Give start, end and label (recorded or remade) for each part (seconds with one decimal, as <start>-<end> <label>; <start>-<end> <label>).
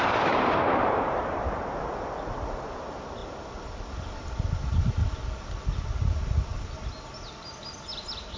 0.0-8.4 recorded